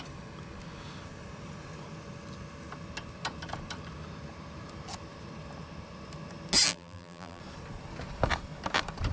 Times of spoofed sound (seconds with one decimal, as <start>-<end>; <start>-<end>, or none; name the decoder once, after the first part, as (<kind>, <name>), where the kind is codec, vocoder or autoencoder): 6.7-7.4 (vocoder, BigVGAN v2)